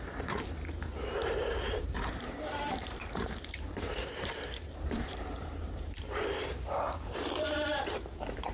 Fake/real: fake